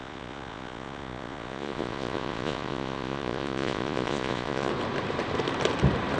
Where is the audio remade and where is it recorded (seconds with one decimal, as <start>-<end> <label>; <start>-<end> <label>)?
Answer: 0.0-4.7 remade; 4.7-6.2 recorded